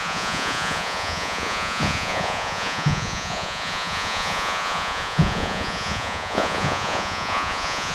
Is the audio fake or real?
fake